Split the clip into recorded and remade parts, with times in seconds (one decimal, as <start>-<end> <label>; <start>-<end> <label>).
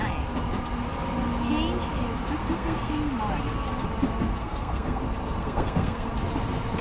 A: 0.0-2.4 recorded; 2.4-3.1 remade; 3.1-4.4 recorded; 4.4-5.0 remade; 5.0-5.4 recorded; 5.4-6.1 remade; 6.1-6.8 recorded